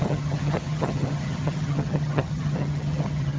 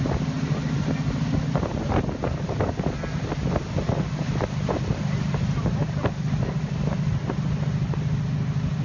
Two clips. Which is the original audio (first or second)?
second